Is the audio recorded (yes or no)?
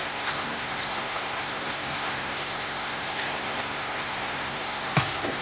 no